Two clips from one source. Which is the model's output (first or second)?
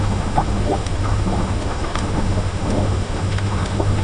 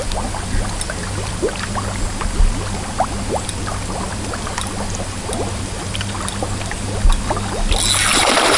first